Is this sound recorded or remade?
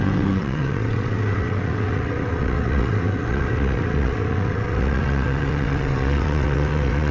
remade